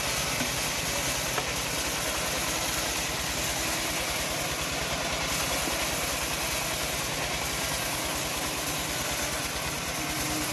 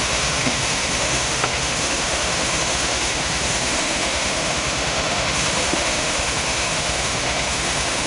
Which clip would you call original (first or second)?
first